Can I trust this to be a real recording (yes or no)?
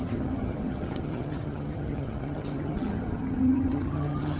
no